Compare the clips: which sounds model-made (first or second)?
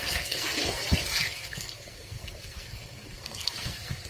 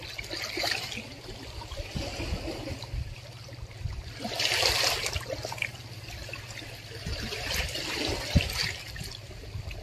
first